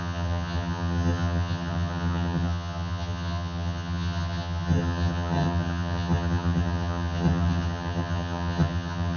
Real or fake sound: fake